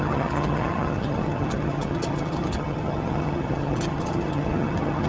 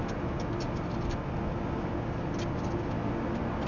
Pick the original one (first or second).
second